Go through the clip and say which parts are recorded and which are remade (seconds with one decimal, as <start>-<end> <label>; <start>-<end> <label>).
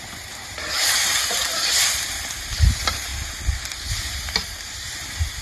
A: 0.0-3.1 remade; 3.1-3.9 recorded; 3.9-5.4 remade